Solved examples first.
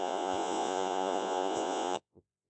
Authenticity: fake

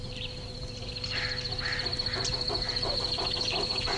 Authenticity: fake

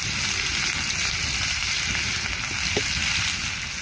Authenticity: real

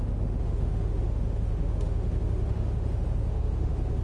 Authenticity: fake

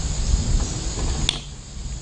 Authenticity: real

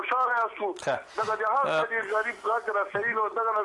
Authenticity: real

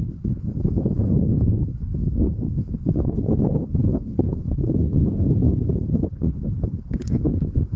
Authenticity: fake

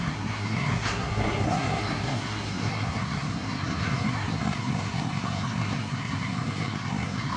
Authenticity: fake